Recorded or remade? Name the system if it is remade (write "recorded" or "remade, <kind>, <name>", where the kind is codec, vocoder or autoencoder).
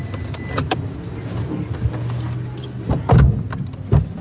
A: recorded